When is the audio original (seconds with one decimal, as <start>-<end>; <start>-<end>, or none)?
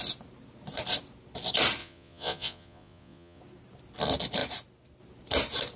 0.0-1.8; 3.4-5.8